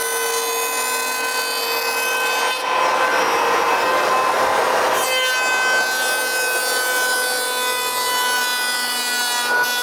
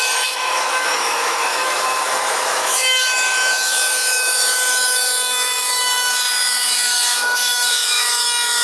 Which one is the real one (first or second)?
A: first